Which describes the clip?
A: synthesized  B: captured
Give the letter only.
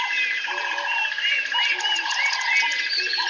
B